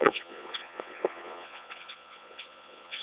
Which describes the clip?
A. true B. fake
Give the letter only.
B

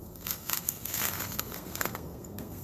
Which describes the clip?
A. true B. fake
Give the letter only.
B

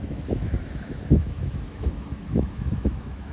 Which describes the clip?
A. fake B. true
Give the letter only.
A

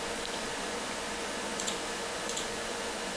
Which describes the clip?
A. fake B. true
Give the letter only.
A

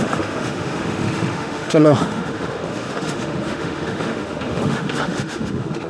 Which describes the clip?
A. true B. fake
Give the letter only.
B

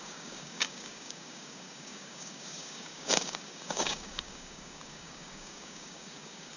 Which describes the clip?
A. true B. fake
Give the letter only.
B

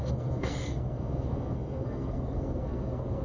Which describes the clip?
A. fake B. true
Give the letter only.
A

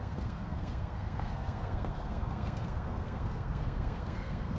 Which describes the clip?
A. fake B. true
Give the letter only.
A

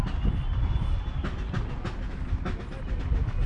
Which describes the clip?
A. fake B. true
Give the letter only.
B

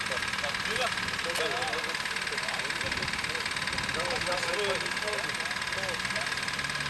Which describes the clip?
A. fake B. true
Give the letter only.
B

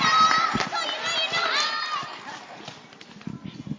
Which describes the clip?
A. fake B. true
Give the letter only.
B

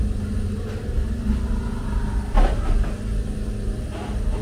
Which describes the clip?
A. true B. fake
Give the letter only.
A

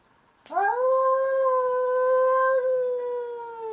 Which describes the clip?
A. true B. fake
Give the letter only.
A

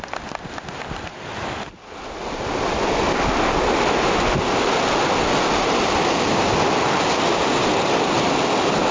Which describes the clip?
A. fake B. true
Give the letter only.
B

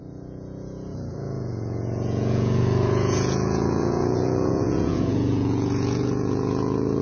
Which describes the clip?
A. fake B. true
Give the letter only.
A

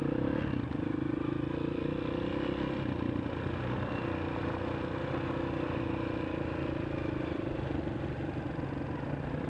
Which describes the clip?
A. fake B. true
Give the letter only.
B